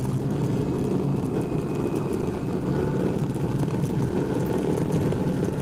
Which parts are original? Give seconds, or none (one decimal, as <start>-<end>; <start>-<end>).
0.0-5.6